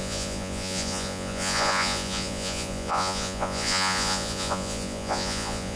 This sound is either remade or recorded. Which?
remade